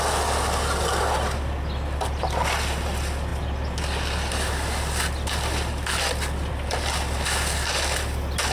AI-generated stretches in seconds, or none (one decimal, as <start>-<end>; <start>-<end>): none